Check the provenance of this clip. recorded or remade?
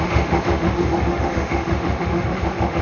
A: remade